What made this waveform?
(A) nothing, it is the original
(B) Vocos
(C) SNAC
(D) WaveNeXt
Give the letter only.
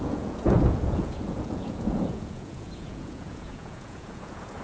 B